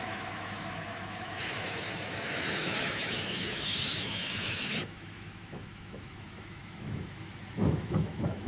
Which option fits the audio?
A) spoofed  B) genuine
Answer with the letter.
A